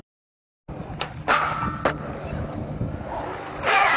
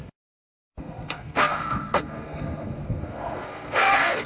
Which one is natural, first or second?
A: first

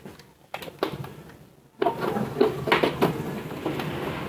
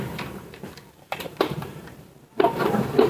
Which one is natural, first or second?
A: first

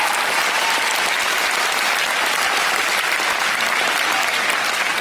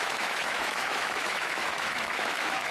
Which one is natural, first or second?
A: first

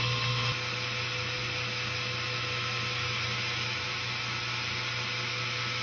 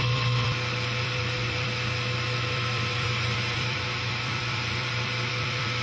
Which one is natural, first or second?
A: first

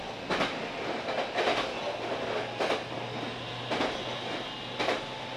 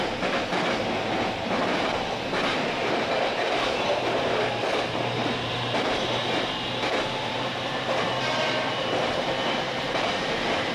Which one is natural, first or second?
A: first